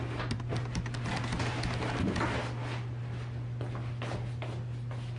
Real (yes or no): yes